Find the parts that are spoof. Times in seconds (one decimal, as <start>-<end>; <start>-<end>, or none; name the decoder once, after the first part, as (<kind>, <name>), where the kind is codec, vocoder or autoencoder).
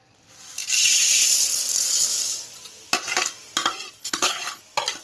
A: 4.0-4.6 (codec, HILCodec)